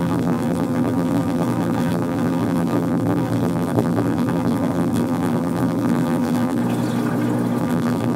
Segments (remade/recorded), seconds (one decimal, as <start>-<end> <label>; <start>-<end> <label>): 0.0-6.6 remade; 6.6-7.6 recorded; 7.6-8.2 remade